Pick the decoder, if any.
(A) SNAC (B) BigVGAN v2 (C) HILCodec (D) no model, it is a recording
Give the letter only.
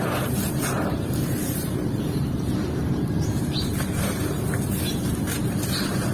B